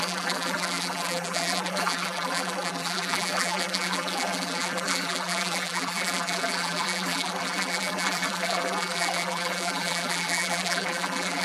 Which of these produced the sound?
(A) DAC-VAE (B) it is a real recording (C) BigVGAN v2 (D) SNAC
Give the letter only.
C